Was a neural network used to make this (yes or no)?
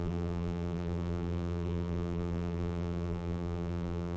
yes